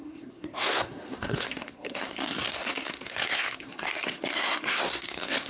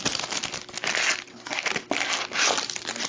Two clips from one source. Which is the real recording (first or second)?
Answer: second